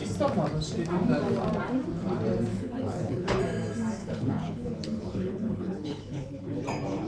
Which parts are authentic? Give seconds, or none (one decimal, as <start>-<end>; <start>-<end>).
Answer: 0.0-2.5; 3.4-4.0; 6.6-7.1